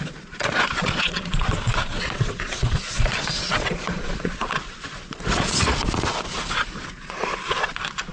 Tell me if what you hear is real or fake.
fake